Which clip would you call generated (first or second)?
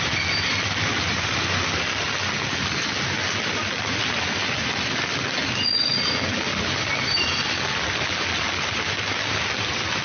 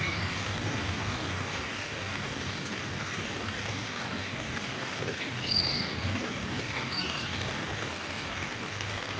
second